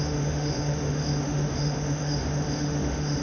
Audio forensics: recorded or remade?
remade